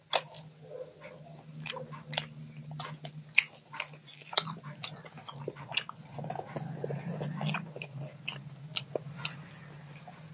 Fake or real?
real